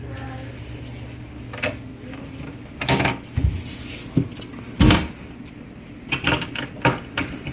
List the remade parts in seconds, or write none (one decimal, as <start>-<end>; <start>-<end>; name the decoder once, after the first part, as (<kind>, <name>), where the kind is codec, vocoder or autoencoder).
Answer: none